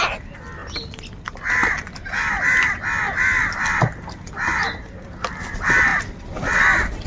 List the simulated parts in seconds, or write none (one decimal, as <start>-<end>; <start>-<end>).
none